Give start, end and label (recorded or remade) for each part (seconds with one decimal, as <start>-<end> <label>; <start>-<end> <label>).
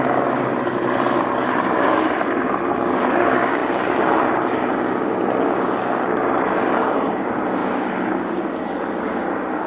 0.0-0.5 remade; 0.5-1.2 recorded; 1.2-9.7 remade